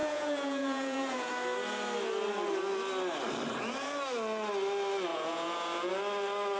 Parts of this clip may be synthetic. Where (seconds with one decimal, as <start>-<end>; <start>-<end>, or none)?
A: 0.0-1.3; 5.1-5.9